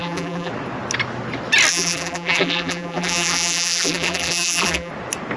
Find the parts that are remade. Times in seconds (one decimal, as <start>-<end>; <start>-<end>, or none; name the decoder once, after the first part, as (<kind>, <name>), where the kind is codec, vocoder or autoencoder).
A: 0.0-0.5 (vocoder, BigVGAN v2); 1.7-4.9